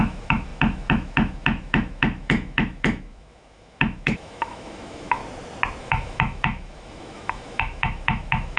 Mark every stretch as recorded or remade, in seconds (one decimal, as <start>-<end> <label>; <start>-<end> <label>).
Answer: 0.0-5.2 remade; 5.2-5.8 recorded; 5.8-8.6 remade